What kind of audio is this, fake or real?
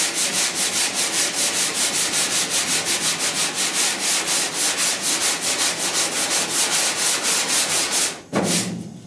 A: real